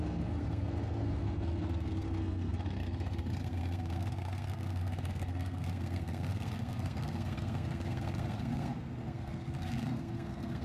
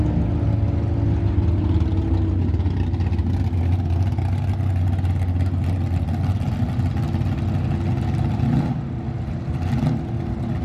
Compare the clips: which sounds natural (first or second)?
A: second